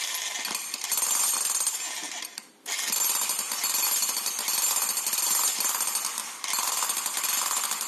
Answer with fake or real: real